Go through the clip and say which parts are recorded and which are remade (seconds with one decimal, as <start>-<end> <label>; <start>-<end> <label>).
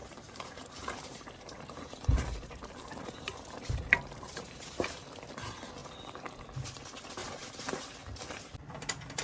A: 0.0-4.9 remade; 4.9-5.8 recorded; 5.8-6.4 remade; 6.4-7.2 recorded; 7.2-7.9 remade; 7.9-9.2 recorded